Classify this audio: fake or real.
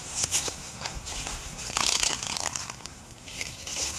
fake